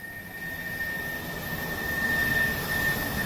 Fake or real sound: real